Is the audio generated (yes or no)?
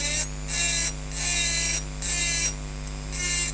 no